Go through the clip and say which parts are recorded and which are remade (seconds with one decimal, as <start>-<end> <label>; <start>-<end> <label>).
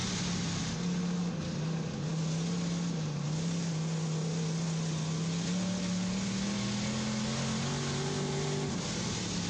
0.0-9.5 recorded